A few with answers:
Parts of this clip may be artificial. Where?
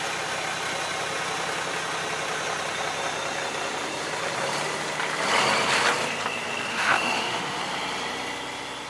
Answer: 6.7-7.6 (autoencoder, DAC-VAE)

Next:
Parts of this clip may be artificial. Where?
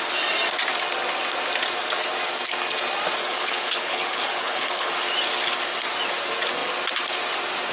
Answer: 3.2-4.9 (codec, HILCodec)